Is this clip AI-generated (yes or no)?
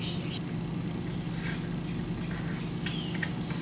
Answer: no